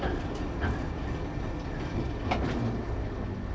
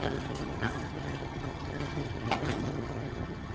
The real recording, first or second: first